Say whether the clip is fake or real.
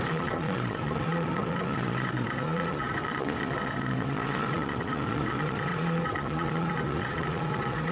fake